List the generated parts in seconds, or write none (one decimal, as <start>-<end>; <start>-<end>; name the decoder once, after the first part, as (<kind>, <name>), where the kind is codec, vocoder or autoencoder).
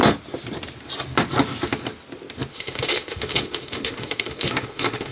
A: 2.5-5.1 (autoencoder, DAC-VAE)